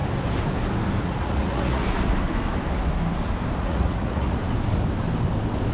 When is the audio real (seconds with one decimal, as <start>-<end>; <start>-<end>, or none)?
0.0-1.0; 1.8-3.6; 4.4-5.7